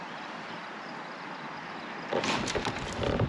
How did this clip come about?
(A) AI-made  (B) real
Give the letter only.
B